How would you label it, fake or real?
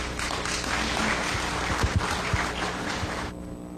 real